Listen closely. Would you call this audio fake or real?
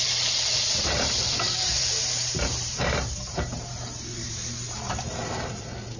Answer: fake